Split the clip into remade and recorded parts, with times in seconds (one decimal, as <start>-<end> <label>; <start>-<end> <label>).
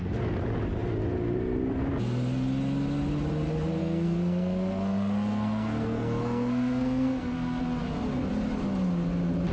0.0-3.8 recorded; 3.8-7.6 remade; 7.6-9.5 recorded